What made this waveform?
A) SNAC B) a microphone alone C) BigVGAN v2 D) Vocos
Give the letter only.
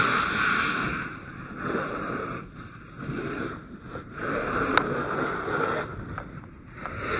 C